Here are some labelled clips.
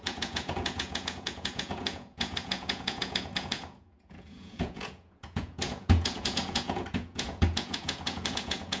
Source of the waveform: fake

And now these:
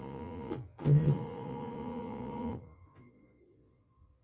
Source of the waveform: fake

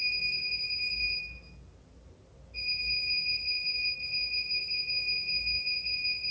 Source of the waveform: real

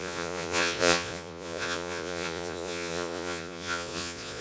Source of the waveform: fake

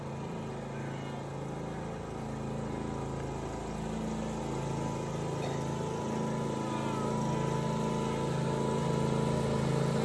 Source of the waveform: real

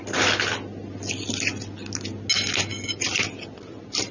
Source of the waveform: real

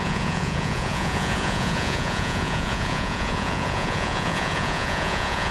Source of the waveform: fake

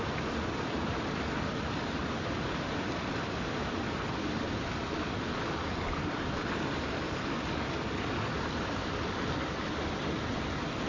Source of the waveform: real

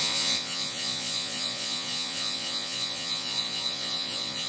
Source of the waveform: fake